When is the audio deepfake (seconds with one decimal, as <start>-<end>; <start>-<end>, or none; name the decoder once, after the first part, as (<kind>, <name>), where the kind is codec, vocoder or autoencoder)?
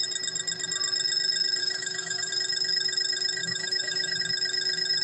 1.6-2.3 (autoencoder, DAC-VAE); 3.4-4.2